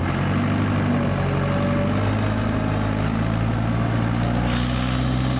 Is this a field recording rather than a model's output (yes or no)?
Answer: yes